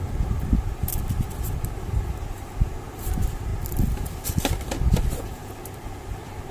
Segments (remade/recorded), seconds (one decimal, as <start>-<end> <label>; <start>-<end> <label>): 0.0-6.5 recorded